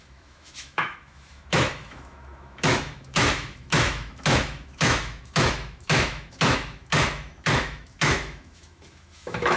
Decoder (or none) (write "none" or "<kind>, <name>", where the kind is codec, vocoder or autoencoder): autoencoder, DAC-VAE